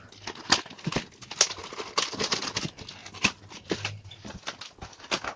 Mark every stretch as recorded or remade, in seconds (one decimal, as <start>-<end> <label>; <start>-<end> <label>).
0.0-1.6 recorded; 1.6-2.1 remade; 2.1-3.0 recorded; 3.0-5.0 remade; 5.0-5.4 recorded